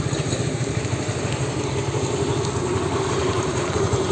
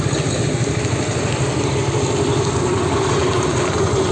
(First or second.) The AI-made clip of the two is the first